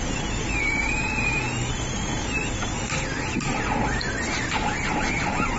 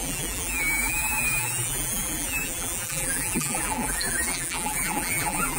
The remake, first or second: second